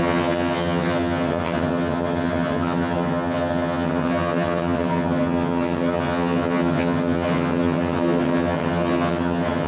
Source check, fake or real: fake